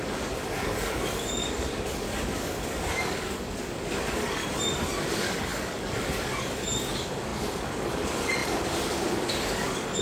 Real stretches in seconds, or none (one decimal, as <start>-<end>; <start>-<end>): 4.4-5.1